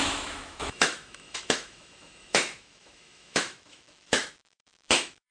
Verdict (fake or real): fake